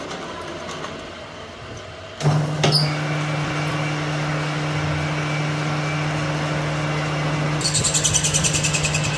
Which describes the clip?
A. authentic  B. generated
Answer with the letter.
A